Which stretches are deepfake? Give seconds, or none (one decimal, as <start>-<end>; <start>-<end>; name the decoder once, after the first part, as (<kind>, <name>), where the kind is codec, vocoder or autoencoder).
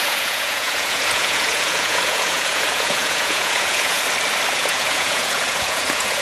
0.0-4.0 (vocoder, Vocos); 4.5-6.2